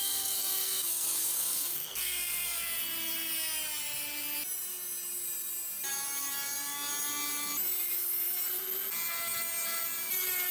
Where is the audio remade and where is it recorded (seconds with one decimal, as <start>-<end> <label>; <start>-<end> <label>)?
0.0-2.6 remade; 2.6-10.5 recorded